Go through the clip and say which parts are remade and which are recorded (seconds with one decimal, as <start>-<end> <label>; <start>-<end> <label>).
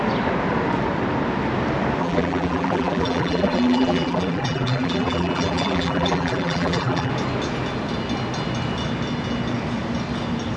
0.0-2.0 recorded; 2.0-7.1 remade; 7.1-10.6 recorded